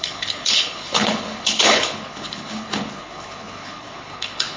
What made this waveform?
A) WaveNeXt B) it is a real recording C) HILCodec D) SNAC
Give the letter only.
C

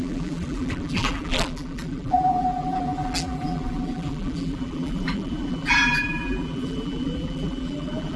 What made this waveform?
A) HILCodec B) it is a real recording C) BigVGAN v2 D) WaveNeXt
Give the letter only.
C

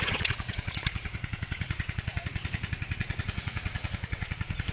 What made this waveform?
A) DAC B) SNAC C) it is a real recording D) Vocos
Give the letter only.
D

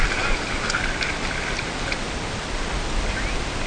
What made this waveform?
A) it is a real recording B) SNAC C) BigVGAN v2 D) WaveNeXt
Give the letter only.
A